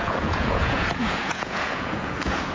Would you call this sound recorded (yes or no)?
no